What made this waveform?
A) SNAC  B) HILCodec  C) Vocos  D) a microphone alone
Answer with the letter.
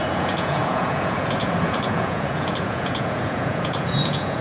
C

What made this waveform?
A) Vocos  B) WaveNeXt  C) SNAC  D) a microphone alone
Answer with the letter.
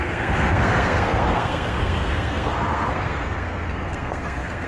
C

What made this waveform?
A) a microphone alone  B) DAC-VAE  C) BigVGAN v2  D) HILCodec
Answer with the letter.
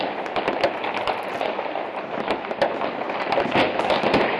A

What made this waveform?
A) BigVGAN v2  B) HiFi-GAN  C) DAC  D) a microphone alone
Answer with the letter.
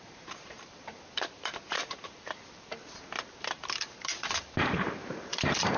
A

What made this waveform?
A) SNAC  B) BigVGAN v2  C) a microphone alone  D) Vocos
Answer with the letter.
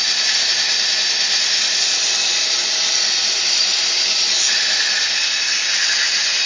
C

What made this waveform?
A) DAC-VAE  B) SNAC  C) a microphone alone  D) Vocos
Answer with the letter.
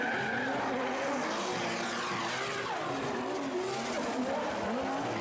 C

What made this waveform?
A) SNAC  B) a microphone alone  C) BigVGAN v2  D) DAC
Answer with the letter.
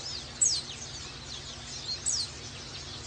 B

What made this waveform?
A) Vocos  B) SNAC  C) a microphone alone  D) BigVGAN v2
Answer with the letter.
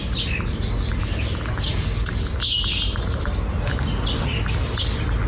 C